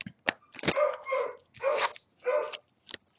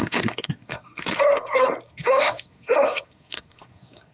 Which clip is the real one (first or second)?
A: first